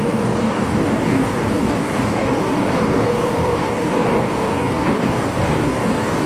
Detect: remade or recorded remade